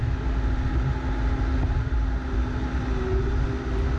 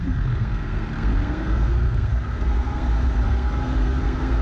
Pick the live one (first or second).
first